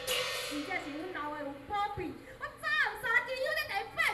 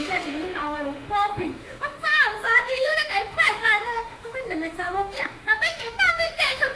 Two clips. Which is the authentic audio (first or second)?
first